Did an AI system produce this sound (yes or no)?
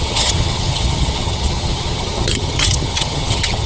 yes